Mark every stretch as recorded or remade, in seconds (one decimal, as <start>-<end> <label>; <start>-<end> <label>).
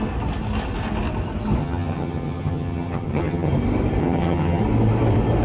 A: 0.0-1.6 recorded; 1.6-3.5 remade; 3.5-4.0 recorded; 4.0-4.6 remade; 4.6-5.4 recorded